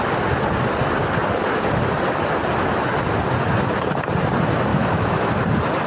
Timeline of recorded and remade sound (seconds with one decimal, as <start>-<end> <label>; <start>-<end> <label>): 0.0-4.7 recorded; 4.7-5.3 remade; 5.3-5.9 recorded